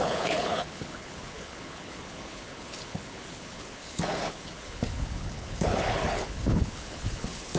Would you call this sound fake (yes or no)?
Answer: yes